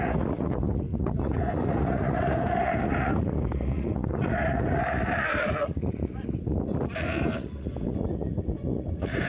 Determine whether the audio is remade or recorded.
remade